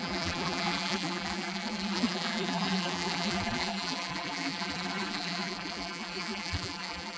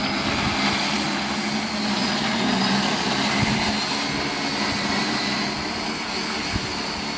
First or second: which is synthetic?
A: first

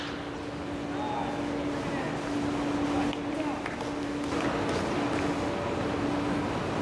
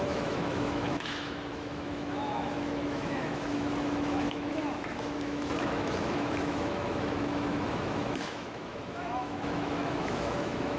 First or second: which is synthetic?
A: second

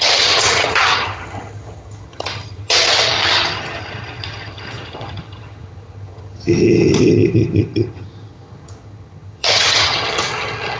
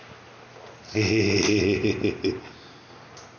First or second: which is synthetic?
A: first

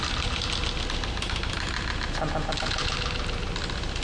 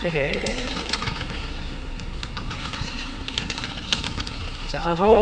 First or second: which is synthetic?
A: second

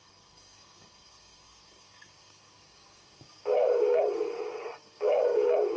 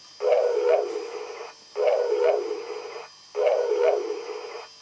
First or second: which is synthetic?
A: first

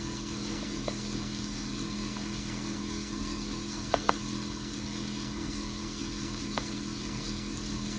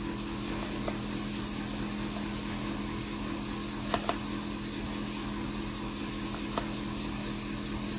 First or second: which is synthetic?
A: first